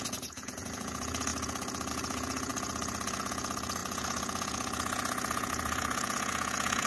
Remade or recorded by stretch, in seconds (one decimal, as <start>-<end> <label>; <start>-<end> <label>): 0.0-6.9 remade